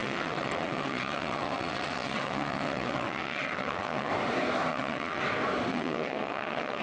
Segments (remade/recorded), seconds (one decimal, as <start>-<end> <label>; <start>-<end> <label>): 0.0-4.1 remade; 4.1-4.7 recorded; 4.7-5.2 remade; 5.2-5.7 recorded; 5.7-6.8 remade